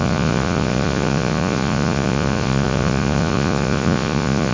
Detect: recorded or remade remade